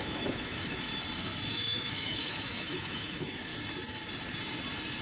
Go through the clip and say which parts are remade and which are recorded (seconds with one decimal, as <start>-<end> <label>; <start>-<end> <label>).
0.0-0.9 remade; 0.9-1.5 recorded; 1.5-3.5 remade; 3.5-5.0 recorded